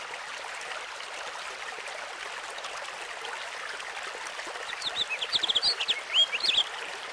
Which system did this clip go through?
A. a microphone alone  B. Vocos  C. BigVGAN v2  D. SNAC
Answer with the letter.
A